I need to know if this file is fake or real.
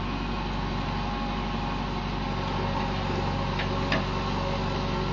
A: real